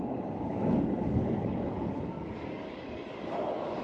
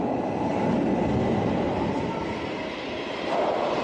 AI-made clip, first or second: first